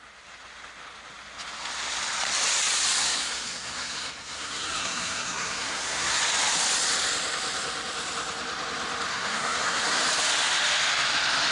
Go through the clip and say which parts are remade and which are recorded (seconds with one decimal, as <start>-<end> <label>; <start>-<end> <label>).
0.0-3.0 recorded; 3.0-6.2 remade; 6.2-9.1 recorded; 9.1-10.0 remade; 10.0-11.5 recorded